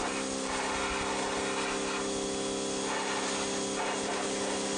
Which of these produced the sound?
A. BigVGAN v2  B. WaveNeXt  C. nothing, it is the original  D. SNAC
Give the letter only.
C